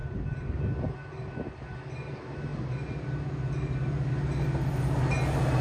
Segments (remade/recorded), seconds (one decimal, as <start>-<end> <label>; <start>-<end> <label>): 0.0-5.6 recorded